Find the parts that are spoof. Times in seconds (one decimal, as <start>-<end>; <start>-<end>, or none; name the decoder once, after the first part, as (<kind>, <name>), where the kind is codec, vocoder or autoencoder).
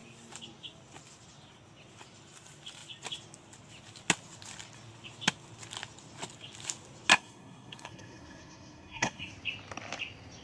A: 7.1-9.3 (codec, SNAC)